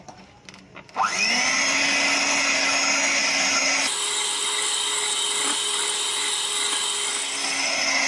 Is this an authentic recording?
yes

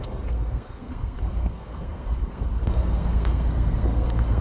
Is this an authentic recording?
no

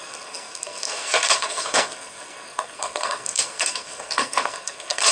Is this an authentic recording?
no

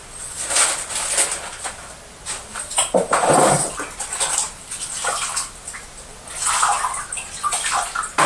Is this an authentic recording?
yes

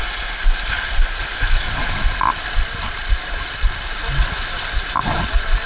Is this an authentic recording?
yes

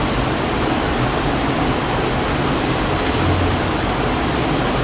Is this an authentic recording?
yes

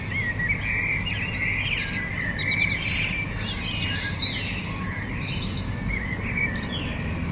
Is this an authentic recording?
yes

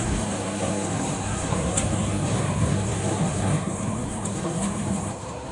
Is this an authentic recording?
no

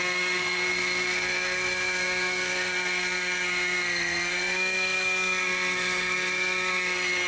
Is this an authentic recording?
no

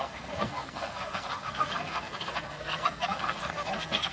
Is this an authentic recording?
no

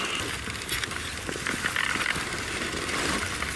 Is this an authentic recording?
yes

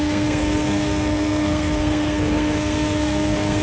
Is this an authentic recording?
no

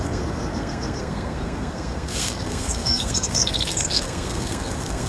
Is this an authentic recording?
no